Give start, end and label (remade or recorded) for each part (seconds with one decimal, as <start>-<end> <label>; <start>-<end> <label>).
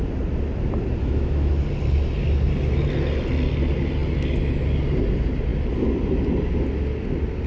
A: 0.0-1.0 recorded; 1.0-1.5 remade; 1.5-7.5 recorded